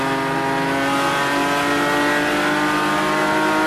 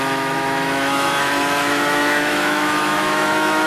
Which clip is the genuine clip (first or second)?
first